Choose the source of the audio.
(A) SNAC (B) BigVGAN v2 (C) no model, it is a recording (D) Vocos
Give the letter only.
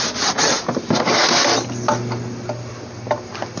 C